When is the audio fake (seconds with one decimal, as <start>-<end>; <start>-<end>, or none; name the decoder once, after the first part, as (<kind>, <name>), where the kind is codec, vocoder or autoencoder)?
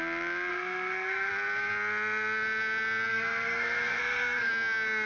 0.5-1.3 (codec, SNAC); 3.1-4.5